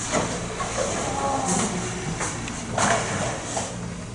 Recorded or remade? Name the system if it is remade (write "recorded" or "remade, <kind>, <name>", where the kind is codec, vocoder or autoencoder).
recorded